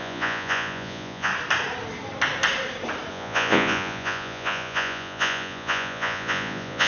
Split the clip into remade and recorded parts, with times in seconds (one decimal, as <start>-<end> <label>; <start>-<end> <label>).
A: 0.0-1.3 remade; 1.3-3.1 recorded; 3.1-6.9 remade